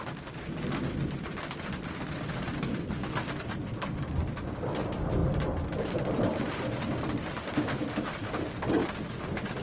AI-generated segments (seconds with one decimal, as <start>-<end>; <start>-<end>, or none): 0.0-8.8